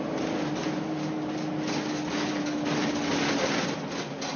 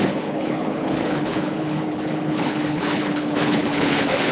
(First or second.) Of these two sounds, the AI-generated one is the second